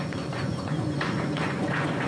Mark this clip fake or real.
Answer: fake